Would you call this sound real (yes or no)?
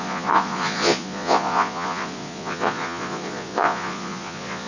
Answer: no